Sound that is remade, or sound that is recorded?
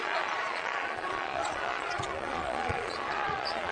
remade